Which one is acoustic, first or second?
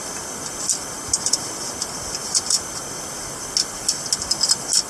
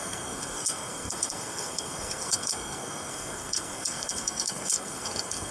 first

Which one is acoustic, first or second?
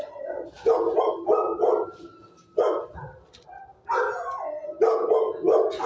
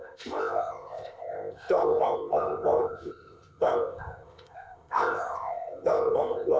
first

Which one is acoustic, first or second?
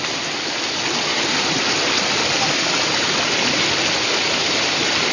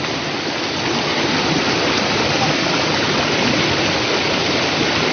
first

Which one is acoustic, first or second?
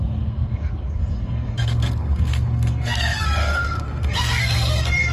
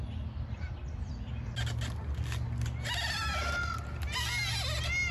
second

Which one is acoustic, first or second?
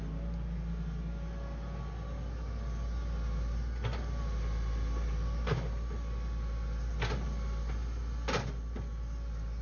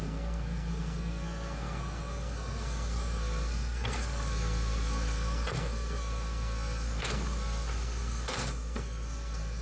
first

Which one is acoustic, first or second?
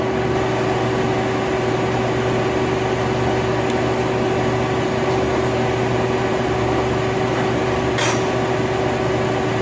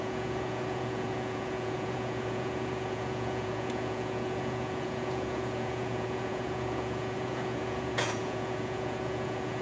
first